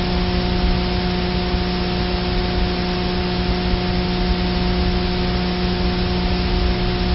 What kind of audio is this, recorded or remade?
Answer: recorded